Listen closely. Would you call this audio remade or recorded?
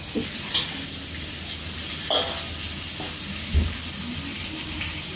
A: recorded